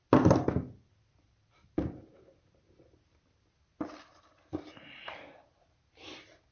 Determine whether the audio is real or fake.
real